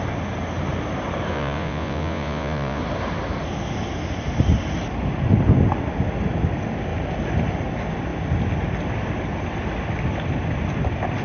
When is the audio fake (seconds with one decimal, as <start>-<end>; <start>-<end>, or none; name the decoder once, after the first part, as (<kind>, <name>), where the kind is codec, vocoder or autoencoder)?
1.3-2.8 (vocoder, Vocos)

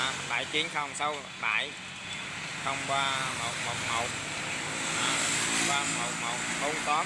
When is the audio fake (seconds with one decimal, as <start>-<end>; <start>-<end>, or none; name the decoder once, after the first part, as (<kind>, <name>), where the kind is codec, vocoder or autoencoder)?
none

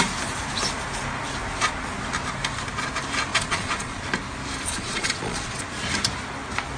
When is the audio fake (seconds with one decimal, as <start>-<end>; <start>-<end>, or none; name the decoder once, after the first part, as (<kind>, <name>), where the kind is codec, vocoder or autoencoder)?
3.3-4.0 (vocoder, Vocos); 4.7-5.6

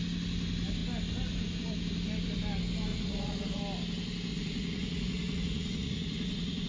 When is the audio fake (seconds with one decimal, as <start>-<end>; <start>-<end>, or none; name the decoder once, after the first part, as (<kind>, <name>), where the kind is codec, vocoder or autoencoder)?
2.9-3.6 (vocoder, Vocos); 4.3-6.7

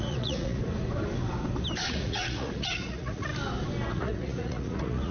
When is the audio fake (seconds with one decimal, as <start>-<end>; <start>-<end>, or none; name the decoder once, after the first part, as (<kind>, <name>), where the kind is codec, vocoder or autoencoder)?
0.0-0.6 (vocoder, Vocos); 1.8-3.3; 3.9-5.1

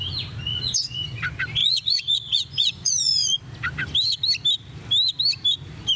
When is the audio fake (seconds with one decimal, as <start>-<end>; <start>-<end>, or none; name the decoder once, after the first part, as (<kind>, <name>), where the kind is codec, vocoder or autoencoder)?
0.5-1.2 (vocoder, Vocos); 1.6-3.4

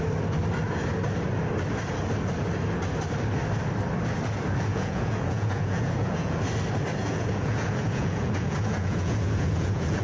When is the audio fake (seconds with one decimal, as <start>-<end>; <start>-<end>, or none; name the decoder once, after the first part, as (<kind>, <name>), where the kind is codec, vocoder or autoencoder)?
4.7-6.4 (vocoder, Vocos); 7.0-10.0

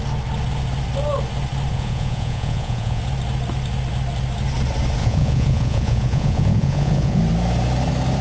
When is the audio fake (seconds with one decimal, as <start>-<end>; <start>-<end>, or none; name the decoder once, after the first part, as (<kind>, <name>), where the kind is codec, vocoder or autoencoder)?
1.7-3.0 (vocoder, Vocos); 5.0-7.2